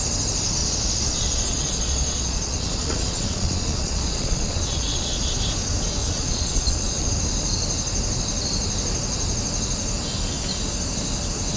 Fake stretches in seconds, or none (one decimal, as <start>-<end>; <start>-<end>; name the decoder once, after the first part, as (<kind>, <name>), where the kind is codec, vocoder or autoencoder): 0.6-5.3 (vocoder, Vocos); 6.0-7.1